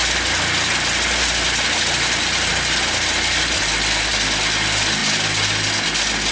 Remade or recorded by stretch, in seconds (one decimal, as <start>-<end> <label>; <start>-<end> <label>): 0.0-6.3 recorded